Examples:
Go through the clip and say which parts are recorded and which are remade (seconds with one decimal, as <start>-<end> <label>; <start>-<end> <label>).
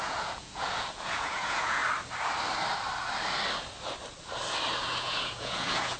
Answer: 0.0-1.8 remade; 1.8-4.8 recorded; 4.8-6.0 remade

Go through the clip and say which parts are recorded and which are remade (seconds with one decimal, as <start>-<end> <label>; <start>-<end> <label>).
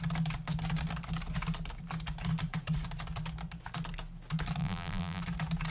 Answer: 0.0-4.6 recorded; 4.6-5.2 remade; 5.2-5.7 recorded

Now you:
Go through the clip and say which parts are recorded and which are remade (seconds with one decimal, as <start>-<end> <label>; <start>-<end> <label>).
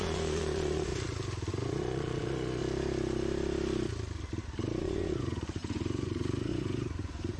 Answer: 0.0-0.9 remade; 0.9-1.5 recorded; 1.5-2.6 remade; 2.6-4.8 recorded; 4.8-7.4 remade